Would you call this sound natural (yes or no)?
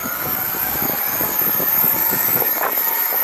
no